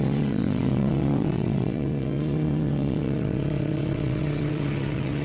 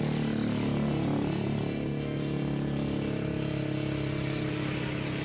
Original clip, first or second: second